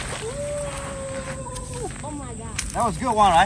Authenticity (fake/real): real